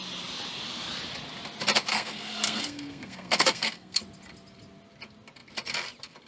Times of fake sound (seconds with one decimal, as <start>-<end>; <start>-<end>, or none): 1.9-4.0